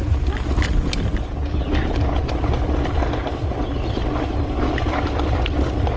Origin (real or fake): real